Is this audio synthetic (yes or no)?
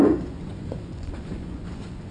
yes